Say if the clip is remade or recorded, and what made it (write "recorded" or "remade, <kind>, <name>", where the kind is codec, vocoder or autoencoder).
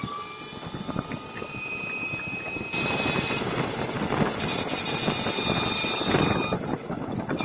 recorded